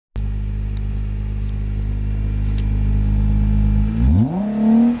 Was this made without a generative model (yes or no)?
yes